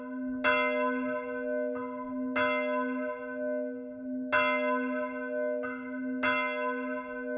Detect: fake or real real